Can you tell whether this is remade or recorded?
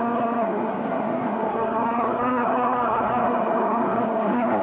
remade